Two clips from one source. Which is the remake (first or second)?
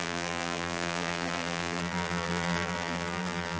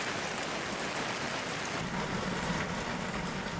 first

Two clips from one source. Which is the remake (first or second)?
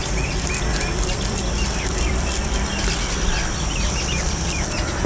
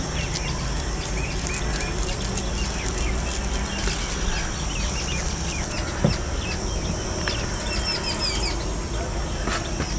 first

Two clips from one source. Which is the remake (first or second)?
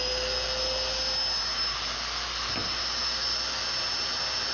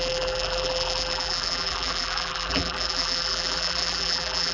second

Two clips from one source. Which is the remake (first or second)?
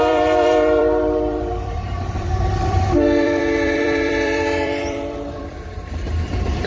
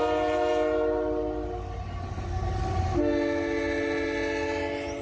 first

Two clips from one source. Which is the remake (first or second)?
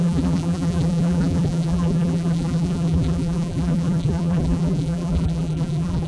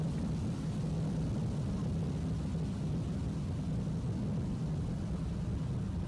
first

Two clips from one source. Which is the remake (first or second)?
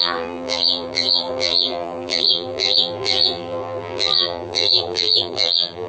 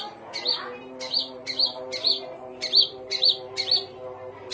first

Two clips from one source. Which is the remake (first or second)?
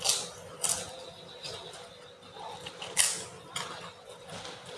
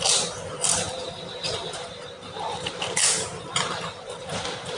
second